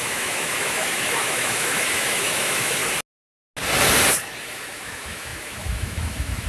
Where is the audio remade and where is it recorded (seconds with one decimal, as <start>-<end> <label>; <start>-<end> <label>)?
0.0-2.8 remade; 2.8-4.4 recorded; 4.4-6.5 remade

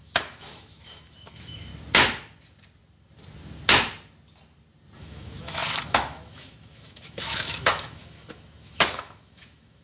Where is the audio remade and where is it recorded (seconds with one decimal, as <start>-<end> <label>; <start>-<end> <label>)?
0.0-1.7 remade; 1.7-5.0 recorded; 5.0-9.8 remade

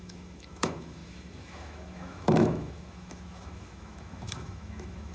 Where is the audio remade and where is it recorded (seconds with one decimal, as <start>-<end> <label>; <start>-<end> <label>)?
0.0-5.1 remade

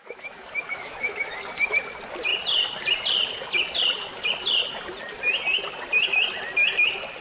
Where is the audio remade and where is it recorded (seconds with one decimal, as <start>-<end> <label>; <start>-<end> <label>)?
0.0-1.4 remade; 1.4-7.2 recorded

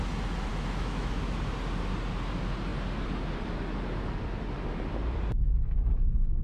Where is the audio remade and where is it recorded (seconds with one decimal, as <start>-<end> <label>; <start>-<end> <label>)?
0.0-0.5 recorded; 0.5-1.3 remade; 1.3-6.4 recorded

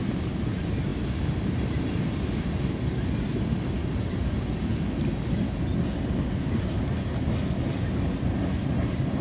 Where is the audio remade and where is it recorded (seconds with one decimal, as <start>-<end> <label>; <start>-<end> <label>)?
0.0-9.2 recorded

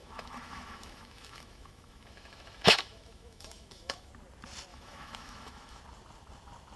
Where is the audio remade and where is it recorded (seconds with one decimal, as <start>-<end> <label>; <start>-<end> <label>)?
0.0-4.1 remade; 4.1-4.7 recorded; 4.7-5.8 remade; 5.8-6.8 recorded

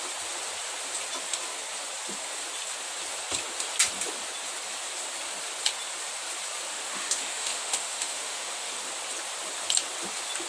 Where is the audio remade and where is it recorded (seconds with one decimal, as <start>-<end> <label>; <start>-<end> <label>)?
0.0-6.7 recorded; 6.7-8.7 remade; 8.7-10.5 recorded